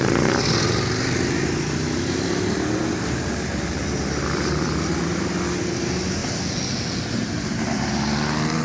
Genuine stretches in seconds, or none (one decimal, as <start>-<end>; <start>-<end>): 0.0-8.6